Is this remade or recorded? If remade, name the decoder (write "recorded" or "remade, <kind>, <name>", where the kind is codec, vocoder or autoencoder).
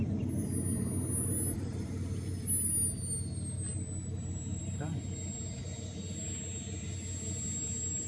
recorded